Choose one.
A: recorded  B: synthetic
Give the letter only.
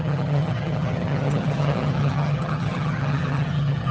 B